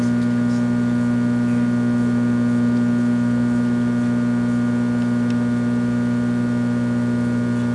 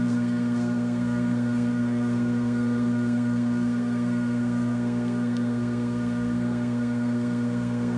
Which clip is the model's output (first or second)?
second